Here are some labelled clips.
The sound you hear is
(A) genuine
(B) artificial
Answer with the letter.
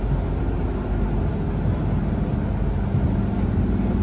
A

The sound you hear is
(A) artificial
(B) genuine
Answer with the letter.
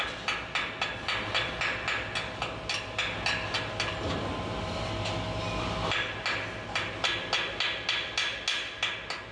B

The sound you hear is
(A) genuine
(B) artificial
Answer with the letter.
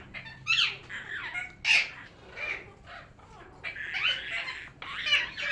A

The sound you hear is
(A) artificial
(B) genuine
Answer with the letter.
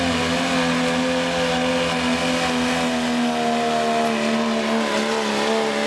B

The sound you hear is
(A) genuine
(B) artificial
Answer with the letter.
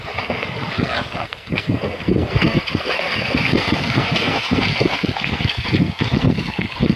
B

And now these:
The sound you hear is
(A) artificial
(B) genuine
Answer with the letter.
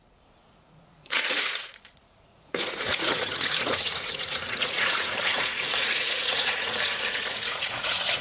A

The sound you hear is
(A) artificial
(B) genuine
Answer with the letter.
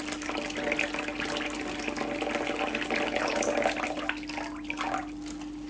B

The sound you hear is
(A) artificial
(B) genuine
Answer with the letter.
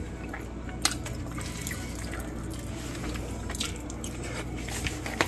B